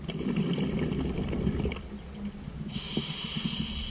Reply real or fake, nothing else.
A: real